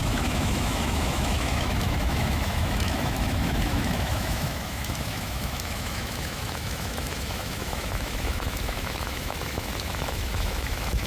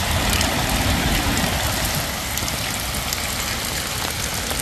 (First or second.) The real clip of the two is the second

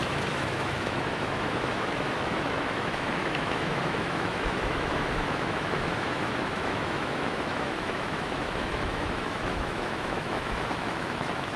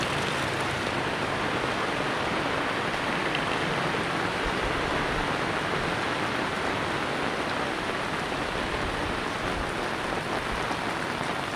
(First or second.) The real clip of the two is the second